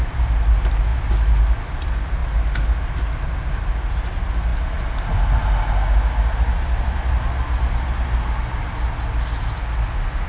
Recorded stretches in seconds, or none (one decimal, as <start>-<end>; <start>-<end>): 0.0-10.3